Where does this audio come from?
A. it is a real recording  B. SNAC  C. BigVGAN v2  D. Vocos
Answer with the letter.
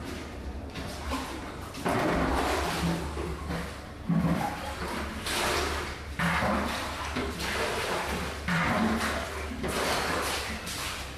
A